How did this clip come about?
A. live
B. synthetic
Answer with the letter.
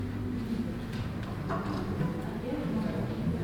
A